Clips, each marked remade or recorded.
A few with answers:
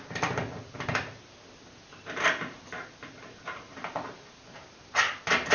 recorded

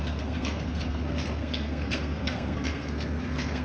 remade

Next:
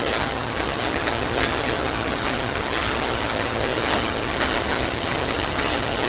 remade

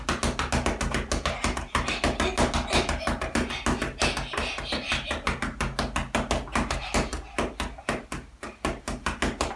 recorded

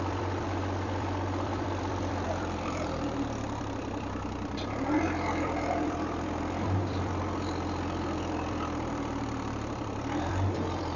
remade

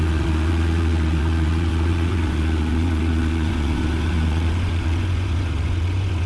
remade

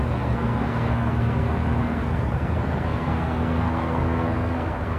remade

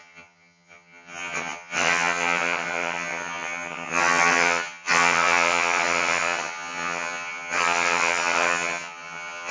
remade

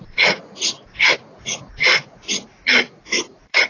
remade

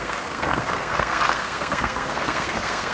remade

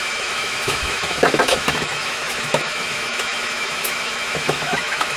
remade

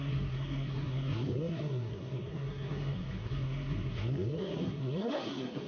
remade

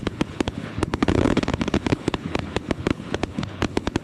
remade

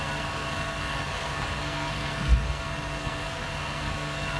remade